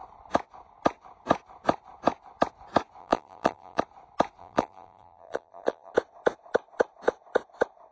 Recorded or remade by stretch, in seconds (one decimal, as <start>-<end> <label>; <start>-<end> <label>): 0.0-3.0 recorded; 3.0-3.8 remade; 3.8-4.4 recorded; 4.4-5.9 remade; 5.9-7.9 recorded